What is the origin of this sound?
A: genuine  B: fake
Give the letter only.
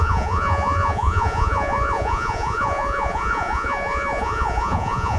B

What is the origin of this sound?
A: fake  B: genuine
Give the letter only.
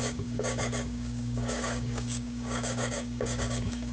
A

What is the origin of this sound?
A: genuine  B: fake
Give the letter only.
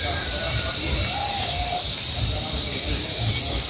B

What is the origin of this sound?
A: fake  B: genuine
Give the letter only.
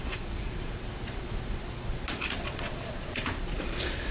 A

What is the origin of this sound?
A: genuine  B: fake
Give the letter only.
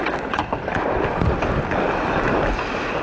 A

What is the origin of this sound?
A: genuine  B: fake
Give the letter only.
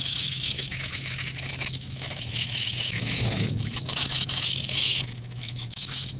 B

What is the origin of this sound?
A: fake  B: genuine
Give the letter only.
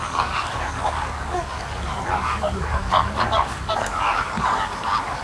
A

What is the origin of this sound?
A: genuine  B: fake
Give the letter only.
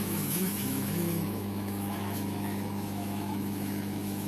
B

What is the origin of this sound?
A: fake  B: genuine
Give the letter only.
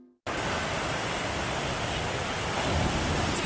B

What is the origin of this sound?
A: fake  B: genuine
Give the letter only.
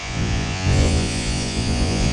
A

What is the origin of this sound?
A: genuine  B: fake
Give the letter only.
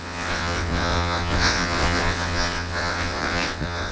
B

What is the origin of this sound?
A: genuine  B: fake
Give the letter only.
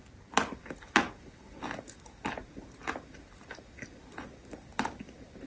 A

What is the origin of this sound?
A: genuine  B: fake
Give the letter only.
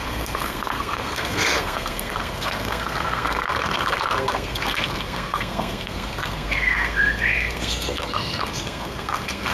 B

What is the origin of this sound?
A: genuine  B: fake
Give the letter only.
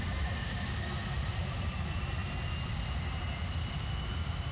A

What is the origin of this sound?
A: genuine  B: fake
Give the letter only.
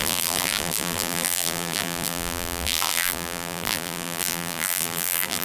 B